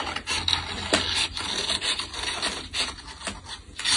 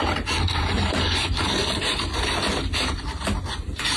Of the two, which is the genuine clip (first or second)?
first